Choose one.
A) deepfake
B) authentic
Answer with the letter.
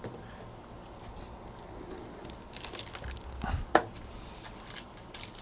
B